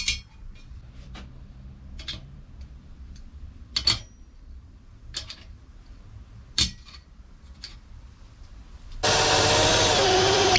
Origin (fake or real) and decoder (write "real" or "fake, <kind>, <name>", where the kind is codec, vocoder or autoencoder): fake, vocoder, BigVGAN v2